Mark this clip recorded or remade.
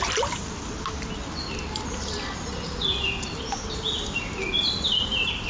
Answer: recorded